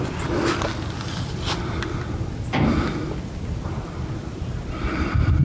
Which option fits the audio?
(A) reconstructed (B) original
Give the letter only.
B